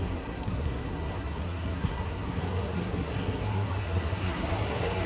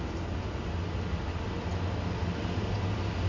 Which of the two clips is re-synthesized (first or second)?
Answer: first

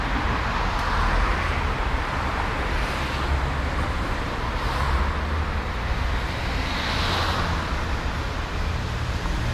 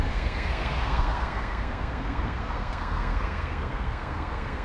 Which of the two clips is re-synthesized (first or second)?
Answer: second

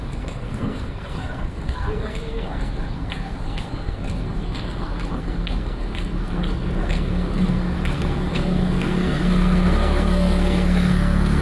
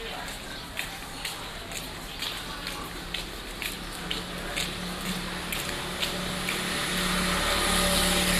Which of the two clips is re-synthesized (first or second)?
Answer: first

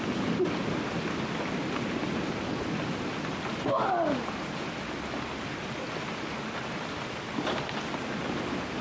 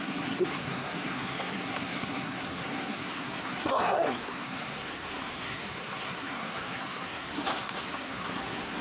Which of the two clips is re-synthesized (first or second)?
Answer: second